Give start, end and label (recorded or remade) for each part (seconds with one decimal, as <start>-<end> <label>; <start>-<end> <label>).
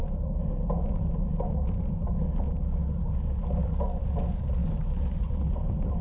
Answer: 0.0-6.0 recorded